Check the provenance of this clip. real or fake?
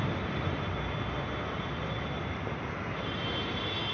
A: real